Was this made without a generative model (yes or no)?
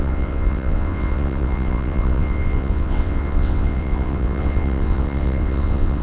no